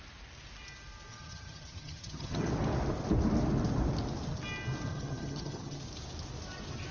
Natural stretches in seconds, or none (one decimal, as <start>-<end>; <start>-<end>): 0.0-1.1; 2.5-4.9; 5.8-6.9